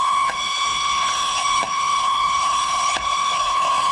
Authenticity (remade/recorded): remade